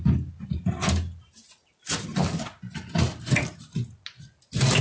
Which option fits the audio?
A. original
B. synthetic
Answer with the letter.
A